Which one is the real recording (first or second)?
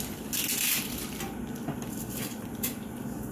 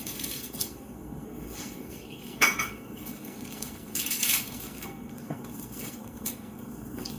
first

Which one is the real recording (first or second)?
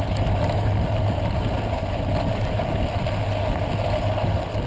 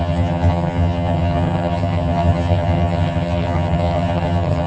first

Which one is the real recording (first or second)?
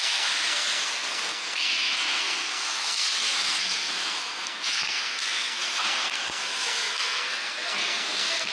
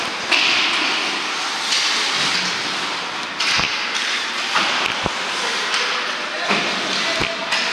second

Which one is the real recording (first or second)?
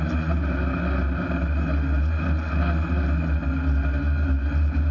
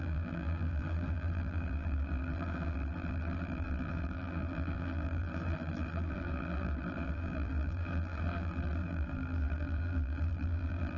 first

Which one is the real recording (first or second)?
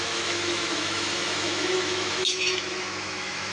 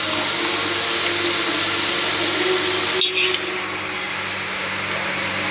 second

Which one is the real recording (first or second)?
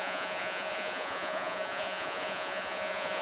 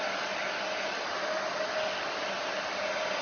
second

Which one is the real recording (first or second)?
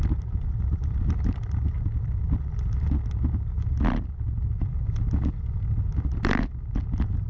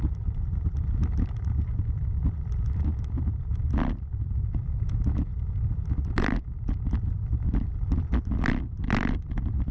first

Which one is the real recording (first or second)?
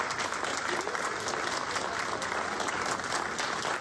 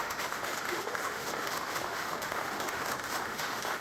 first